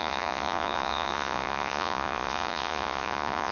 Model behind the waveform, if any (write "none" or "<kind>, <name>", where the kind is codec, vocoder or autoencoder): vocoder, Vocos